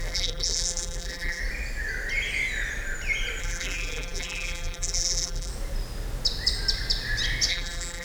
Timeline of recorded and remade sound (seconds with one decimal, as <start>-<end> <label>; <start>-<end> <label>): 0.0-1.4 remade; 1.4-3.4 recorded; 3.4-5.5 remade; 5.5-7.5 recorded; 7.5-8.0 remade